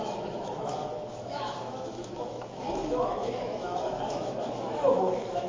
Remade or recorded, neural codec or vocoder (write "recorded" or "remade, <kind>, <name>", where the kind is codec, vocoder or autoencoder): remade, autoencoder, DAC-VAE